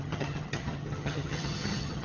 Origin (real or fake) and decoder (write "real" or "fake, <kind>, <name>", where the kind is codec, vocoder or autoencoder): fake, vocoder, HiFi-GAN